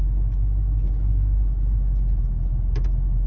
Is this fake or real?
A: real